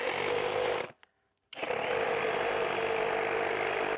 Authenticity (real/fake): fake